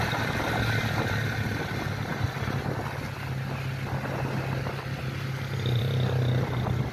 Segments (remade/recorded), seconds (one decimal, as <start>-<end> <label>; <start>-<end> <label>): 0.0-6.9 recorded

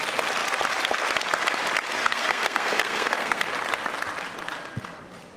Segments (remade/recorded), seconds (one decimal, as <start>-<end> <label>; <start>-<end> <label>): 0.0-2.0 recorded; 2.0-3.4 remade; 3.4-5.4 recorded

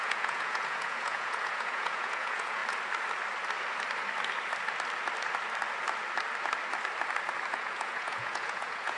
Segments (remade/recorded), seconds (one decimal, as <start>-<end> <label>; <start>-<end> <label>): 0.0-2.6 remade; 2.6-7.5 recorded; 7.5-9.0 remade

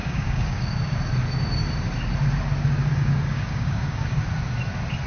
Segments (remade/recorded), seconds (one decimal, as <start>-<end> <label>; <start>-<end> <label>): 0.0-1.0 remade; 1.0-2.9 recorded; 2.9-4.2 remade; 4.2-5.1 recorded

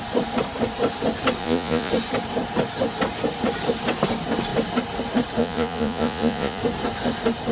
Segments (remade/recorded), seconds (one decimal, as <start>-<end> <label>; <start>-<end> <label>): 0.0-1.4 recorded; 1.4-1.9 remade; 1.9-5.4 recorded; 5.4-6.6 remade; 6.6-7.5 recorded